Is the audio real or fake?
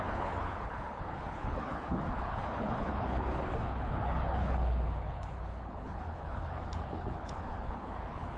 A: fake